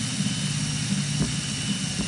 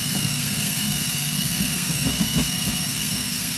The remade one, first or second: second